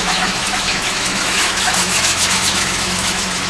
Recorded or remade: remade